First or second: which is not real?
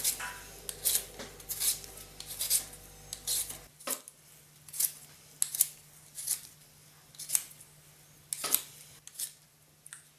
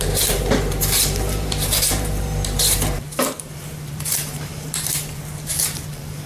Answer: second